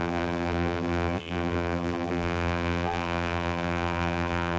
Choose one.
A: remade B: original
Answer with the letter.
A